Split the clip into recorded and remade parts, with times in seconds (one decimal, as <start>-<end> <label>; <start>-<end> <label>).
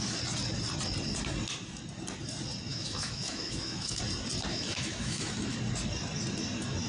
0.0-2.7 recorded; 2.7-4.0 remade; 4.0-4.5 recorded; 4.5-5.4 remade; 5.4-6.9 recorded